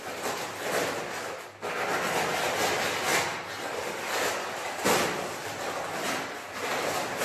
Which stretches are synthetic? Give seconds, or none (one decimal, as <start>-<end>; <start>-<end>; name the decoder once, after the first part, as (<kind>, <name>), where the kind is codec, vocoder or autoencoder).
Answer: none